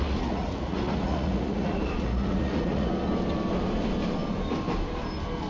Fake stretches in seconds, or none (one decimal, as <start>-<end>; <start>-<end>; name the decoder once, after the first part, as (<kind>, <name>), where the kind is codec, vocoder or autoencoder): 0.0-2.9 (vocoder, Vocos)

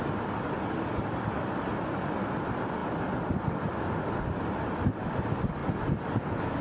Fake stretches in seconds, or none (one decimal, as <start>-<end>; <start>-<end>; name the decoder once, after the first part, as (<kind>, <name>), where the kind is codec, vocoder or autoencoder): none

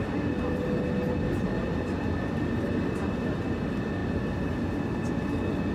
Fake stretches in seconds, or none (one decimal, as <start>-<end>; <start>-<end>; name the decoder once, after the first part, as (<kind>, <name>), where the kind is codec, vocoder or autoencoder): none

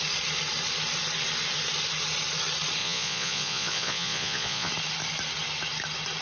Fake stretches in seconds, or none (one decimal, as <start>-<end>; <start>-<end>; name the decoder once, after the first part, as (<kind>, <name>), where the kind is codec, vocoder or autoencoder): 2.8-4.7 (vocoder, Vocos)

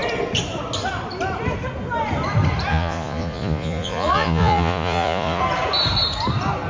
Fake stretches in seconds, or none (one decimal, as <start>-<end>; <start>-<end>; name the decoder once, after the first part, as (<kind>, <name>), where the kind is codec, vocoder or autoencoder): 2.7-5.4 (vocoder, Vocos)